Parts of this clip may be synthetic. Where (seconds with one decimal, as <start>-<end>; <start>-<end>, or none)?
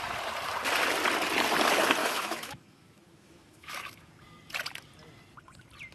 2.0-4.1